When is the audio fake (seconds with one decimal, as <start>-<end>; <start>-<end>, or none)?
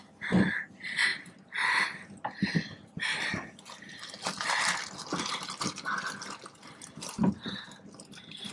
none